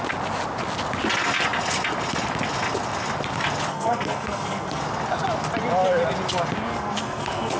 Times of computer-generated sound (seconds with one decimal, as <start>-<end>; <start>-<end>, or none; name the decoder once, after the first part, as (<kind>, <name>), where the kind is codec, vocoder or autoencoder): 3.7-4.8 (codec, SNAC); 6.7-7.6